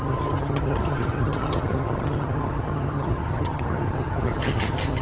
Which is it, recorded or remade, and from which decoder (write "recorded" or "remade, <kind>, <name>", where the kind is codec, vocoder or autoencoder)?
remade, vocoder, HiFi-GAN